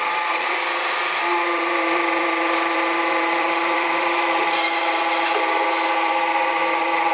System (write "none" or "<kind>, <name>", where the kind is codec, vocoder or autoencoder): vocoder, BigVGAN v2